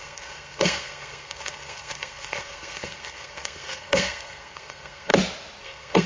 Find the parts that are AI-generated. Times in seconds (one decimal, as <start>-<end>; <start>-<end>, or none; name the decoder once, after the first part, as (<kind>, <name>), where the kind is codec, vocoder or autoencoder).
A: 0.0-5.1 (codec, SNAC); 5.6-6.1

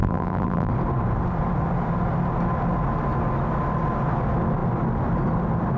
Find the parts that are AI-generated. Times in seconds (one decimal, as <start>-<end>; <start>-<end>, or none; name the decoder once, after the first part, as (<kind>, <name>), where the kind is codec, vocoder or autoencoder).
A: 0.0-0.7 (vocoder, BigVGAN v2)

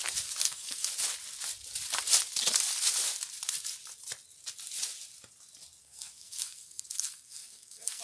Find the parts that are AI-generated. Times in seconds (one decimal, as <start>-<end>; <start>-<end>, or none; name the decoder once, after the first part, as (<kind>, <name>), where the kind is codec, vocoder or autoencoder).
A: 0.4-0.9 (codec, SNAC); 5.8-8.0

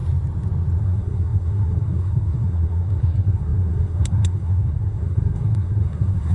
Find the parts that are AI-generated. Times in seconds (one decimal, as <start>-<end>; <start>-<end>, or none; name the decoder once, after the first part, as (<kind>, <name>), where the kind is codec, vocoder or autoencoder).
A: 0.8-6.3 (codec, SNAC)